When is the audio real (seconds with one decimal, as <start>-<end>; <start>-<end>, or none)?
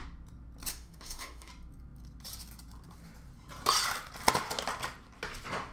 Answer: 0.0-0.7; 1.5-5.7